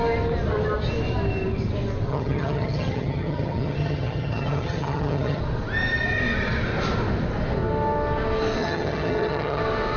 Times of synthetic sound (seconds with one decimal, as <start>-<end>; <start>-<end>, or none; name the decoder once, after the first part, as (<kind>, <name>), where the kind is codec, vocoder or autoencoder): 2.1-5.4 (vocoder, HiFi-GAN); 8.6-9.6

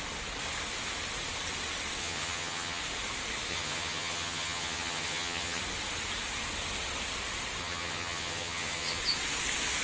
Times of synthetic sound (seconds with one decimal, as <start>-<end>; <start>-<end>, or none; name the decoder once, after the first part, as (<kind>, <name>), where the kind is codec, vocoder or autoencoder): 2.0-2.8 (vocoder, HiFi-GAN); 3.5-5.6; 7.6-9.0

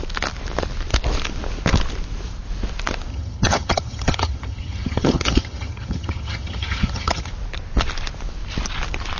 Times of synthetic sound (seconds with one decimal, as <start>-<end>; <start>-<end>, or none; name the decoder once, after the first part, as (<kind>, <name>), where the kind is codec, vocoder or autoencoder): 3.1-7.3 (vocoder, HiFi-GAN)